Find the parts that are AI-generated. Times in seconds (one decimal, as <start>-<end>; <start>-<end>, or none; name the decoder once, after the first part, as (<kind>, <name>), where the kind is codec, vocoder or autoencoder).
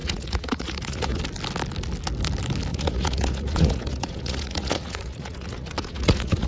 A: 0.0-1.2 (vocoder, Vocos); 2.7-6.5